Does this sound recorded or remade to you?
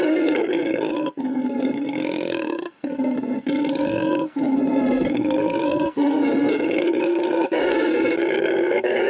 remade